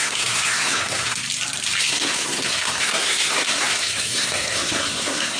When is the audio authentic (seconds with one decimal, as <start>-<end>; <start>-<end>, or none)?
1.2-1.8